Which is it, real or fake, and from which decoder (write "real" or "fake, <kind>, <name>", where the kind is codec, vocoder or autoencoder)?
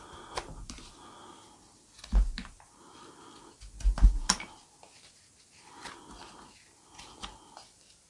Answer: real